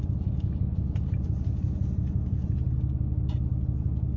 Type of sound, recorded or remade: recorded